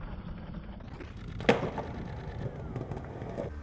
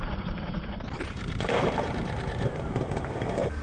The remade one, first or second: second